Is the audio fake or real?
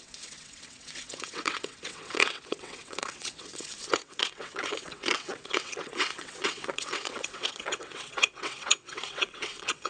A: fake